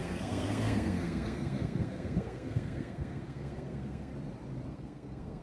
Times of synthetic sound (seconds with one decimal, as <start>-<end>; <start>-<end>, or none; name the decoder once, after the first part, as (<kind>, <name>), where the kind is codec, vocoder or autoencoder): 0.0-4.1 (codec, SNAC); 4.7-5.4

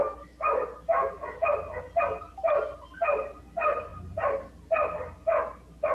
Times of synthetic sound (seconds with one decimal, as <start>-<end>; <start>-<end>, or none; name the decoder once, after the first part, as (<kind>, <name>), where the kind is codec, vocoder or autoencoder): 3.9-4.5 (vocoder, BigVGAN v2)